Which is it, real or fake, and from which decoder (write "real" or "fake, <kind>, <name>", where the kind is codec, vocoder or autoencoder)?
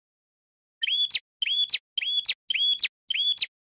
real